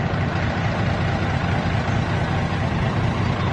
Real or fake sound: real